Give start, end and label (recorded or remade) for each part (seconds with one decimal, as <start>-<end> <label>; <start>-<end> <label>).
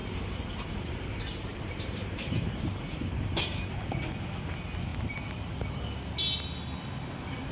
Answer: 0.0-0.9 remade; 0.9-1.5 recorded; 1.5-3.6 remade; 3.6-7.5 recorded